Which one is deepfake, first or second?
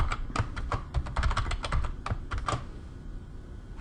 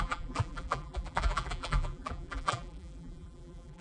second